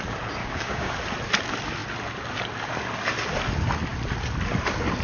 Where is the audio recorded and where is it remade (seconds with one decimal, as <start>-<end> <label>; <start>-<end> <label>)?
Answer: 0.0-0.4 recorded; 0.4-0.9 remade; 0.9-5.0 recorded